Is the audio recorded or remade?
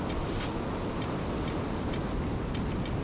recorded